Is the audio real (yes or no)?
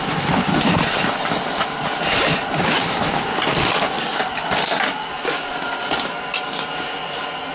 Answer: yes